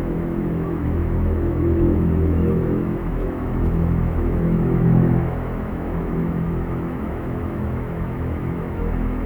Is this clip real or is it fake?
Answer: fake